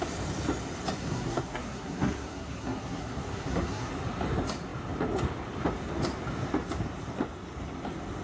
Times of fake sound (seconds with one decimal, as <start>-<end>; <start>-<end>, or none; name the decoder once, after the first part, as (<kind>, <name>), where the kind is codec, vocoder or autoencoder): 1.0-3.9 (codec, SNAC)